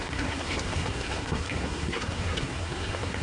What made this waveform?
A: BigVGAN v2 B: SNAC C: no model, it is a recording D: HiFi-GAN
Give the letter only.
B